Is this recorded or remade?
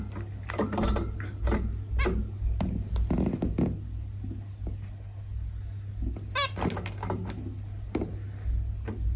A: recorded